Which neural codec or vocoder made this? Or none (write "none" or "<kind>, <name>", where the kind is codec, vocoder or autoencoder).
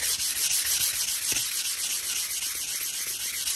none